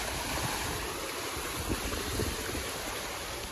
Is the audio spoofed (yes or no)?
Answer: no